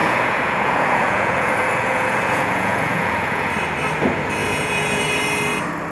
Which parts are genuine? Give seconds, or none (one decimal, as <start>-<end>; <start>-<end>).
3.5-4.4; 5.0-5.9

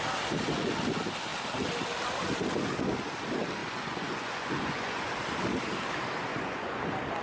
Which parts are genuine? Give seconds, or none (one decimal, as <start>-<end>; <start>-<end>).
0.0-3.6; 5.1-6.3; 6.8-7.2

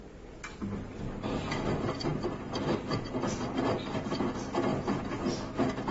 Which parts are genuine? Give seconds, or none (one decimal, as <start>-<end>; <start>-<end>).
0.0-4.7; 5.3-5.9

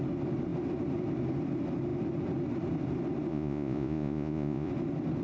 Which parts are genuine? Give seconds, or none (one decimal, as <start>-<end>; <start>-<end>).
0.0-3.3; 4.7-5.2

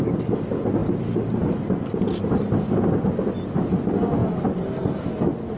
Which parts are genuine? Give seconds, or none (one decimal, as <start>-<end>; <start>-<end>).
0.0-5.6

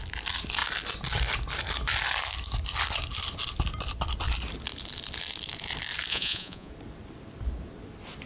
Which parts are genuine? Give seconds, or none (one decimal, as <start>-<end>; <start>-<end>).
0.0-6.1; 6.7-8.3

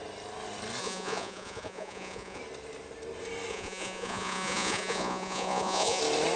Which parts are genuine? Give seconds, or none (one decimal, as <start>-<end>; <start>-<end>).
0.0-0.8; 2.4-3.5; 6.0-6.4

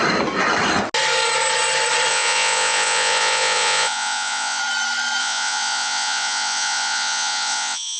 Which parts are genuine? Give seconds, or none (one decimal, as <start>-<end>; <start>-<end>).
0.0-2.1; 4.6-5.2